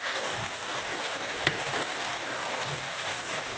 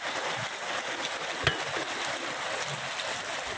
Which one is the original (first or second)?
second